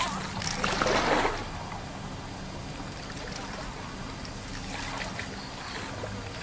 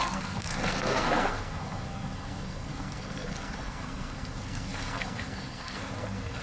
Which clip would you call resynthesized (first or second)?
second